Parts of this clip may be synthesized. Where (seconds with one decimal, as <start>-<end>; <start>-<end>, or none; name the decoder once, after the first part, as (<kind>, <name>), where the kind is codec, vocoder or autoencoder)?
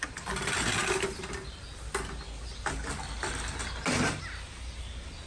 none